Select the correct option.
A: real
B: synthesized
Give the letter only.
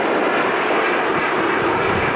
A